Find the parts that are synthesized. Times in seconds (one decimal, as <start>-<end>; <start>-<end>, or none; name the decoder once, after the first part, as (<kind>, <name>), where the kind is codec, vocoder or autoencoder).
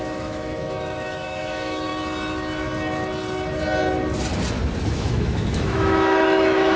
0.0-1.9 (autoencoder, DAC-VAE); 4.9-6.8